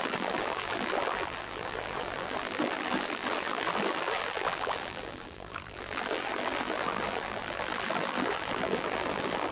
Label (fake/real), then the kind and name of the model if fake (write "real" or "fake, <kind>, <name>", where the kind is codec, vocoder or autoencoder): fake, vocoder, BigVGAN v2